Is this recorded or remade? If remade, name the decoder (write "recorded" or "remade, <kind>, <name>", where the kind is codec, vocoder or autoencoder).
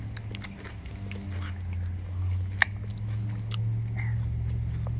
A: recorded